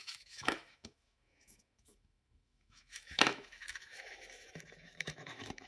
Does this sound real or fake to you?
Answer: fake